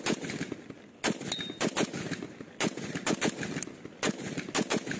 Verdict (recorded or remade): recorded